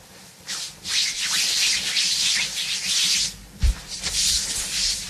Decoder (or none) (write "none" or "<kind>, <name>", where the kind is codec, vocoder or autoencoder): vocoder, BigVGAN v2